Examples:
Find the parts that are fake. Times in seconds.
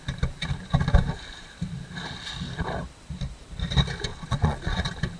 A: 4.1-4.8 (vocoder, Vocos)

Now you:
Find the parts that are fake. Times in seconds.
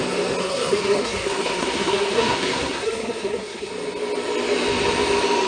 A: 0.4-3.7 (codec, SNAC)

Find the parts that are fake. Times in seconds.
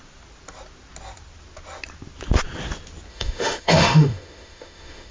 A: 3.1-5.1 (autoencoder, DAC-VAE)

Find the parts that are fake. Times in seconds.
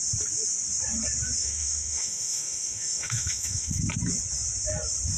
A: 1.4-3.8 (autoencoder, DAC-VAE)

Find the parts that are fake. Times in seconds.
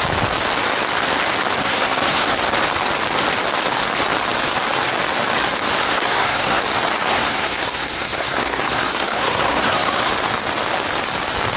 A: 1.6-2.4 (codec, SNAC); 5.9-6.6; 7.1-10.1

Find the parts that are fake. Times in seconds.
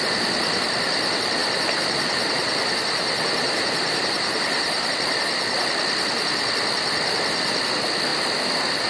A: 1.4-4.9 (vocoder, BigVGAN v2)